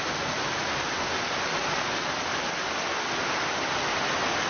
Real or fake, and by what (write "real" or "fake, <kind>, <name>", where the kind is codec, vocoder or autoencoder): real